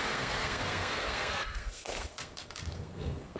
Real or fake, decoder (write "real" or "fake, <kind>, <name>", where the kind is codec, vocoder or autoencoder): fake, codec, SNAC